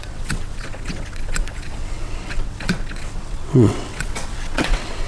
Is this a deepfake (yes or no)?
yes